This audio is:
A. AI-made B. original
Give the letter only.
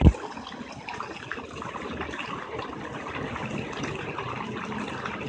B